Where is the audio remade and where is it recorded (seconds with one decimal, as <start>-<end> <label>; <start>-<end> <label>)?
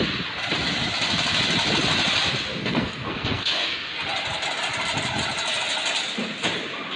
0.0-2.6 recorded; 2.6-4.0 remade; 4.0-7.0 recorded